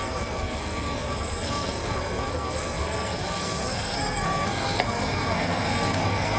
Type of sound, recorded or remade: remade